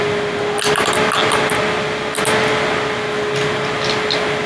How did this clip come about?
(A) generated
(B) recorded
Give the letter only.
B